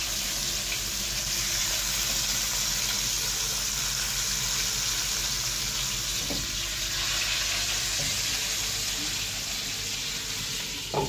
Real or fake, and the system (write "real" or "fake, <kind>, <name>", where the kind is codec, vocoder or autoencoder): real